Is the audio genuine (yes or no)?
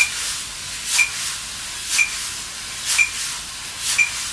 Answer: yes